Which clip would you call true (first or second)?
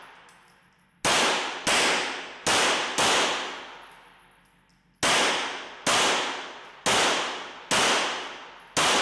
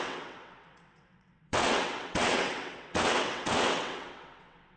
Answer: first